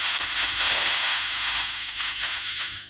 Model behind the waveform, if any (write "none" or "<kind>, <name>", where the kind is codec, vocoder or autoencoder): autoencoder, DAC-VAE